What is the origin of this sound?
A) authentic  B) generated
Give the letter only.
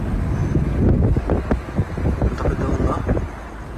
A